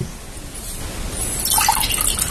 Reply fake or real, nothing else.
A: real